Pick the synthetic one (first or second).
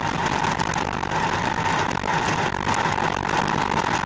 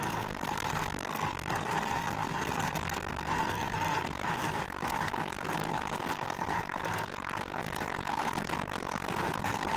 second